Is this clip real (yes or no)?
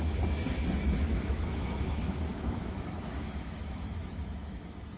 no